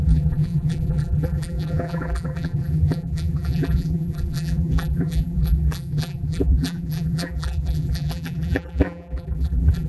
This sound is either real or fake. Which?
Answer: fake